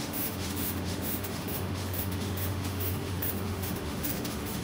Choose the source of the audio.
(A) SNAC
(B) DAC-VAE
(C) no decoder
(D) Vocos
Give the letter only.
B